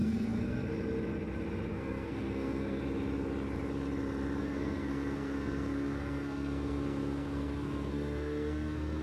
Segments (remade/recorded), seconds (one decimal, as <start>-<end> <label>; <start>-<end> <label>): 0.0-0.7 remade; 0.7-1.7 recorded; 1.7-2.8 remade; 2.8-4.4 recorded; 4.4-9.0 remade